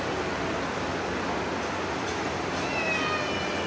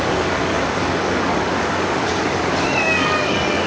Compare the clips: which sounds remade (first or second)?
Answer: second